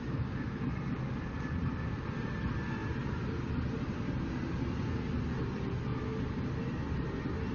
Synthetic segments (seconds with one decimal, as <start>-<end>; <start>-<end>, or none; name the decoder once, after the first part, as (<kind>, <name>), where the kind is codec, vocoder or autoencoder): 0.0-0.7 (codec, DAC)